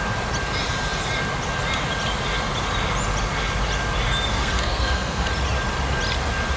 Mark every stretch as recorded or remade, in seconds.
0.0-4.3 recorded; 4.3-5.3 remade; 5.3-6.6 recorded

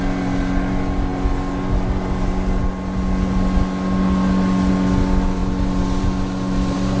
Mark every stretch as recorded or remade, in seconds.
0.0-7.0 recorded

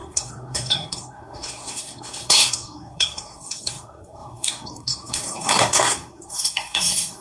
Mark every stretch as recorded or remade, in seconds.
0.0-7.2 remade